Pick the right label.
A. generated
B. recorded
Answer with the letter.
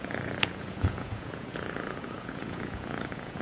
A